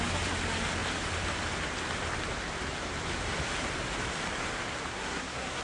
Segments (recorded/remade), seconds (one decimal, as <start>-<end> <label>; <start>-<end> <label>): 0.0-4.9 recorded; 4.9-5.6 remade